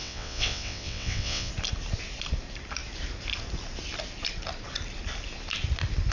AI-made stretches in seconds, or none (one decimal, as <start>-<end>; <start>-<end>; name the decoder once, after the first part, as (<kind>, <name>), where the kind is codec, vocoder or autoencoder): 0.0-1.5 (vocoder, WaveNeXt)

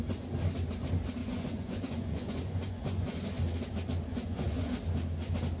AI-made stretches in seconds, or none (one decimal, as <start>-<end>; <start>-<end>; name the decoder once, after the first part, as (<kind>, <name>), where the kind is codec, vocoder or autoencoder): 1.2-3.2 (vocoder, Vocos); 4.1-4.7

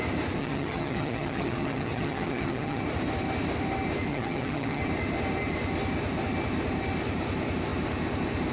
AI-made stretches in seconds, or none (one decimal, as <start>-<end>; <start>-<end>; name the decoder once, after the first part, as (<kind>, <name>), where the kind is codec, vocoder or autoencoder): 0.4-2.8 (vocoder, HiFi-GAN); 4.1-4.8

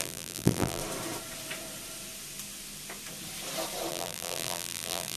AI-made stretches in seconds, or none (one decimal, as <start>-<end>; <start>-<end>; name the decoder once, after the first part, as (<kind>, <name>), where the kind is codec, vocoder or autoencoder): 0.0-0.8 (vocoder, BigVGAN v2); 3.9-5.2

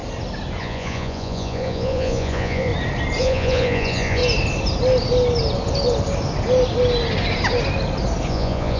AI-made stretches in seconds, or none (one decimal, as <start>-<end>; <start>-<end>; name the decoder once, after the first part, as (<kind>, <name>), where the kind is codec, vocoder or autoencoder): 0.6-2.7 (vocoder, Vocos); 3.2-4.2; 8.3-8.8

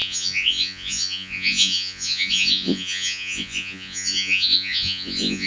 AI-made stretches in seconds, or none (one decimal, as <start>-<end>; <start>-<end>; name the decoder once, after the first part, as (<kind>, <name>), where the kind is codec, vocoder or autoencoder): 0.0-5.5 (vocoder, Vocos)

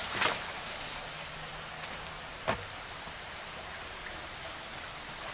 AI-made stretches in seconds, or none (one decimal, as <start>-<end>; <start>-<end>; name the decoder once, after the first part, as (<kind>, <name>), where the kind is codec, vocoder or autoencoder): 0.0-0.8 (vocoder, BigVGAN v2)